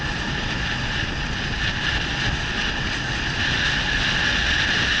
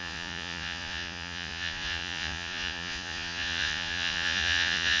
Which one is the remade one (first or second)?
second